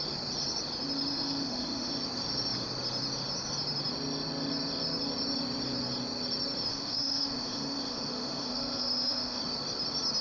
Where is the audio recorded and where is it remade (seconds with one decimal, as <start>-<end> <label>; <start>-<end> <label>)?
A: 0.0-1.1 recorded; 1.1-1.9 remade; 1.9-6.7 recorded; 6.7-9.4 remade; 9.4-10.2 recorded